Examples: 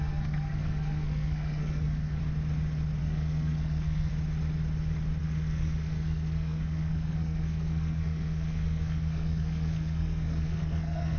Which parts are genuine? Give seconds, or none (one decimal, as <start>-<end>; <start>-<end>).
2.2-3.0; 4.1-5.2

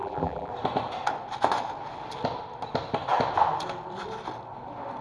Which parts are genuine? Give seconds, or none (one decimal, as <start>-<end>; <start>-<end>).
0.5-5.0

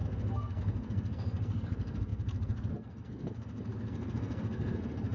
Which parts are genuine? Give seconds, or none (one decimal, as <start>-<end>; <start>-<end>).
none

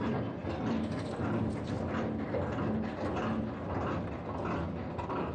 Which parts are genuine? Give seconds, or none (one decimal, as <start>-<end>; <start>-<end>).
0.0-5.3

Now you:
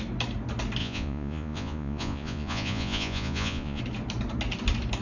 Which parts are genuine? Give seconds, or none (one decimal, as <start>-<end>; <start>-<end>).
0.0-0.8; 3.8-5.0

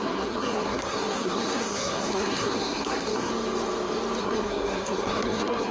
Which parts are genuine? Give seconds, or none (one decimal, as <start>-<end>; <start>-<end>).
3.3-4.2